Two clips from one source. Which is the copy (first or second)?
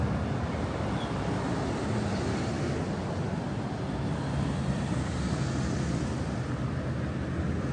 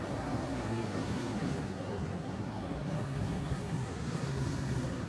second